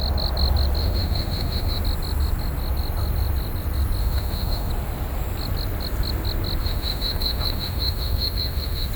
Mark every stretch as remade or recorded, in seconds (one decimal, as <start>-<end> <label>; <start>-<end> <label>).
0.0-0.8 recorded; 0.8-1.8 remade; 1.8-4.0 recorded; 4.0-4.7 remade; 4.7-6.6 recorded; 6.6-8.9 remade